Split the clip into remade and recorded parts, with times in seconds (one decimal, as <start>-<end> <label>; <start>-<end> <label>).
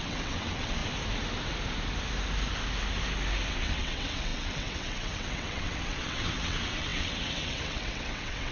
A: 0.0-0.8 remade; 0.8-3.5 recorded; 3.5-8.5 remade